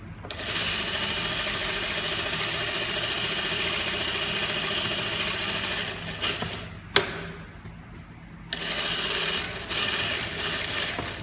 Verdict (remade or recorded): recorded